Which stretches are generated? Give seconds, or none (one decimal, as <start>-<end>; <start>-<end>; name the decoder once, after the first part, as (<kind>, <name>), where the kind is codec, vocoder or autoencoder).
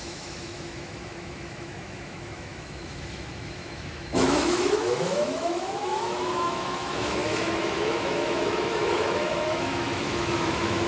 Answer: 0.0-10.9 (autoencoder, DAC-VAE)